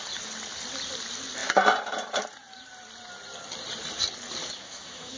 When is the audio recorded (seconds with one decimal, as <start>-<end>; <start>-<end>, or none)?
0.0-4.4

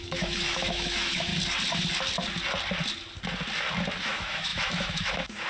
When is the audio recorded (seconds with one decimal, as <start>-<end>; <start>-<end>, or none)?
1.3-4.0

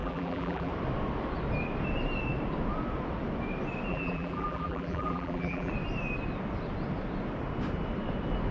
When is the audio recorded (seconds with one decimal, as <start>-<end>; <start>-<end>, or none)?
0.7-3.9; 5.7-8.5

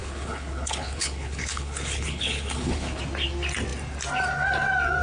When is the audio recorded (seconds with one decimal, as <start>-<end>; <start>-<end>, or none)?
3.0-5.0